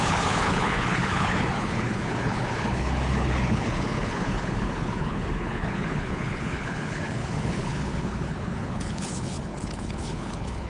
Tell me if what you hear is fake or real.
fake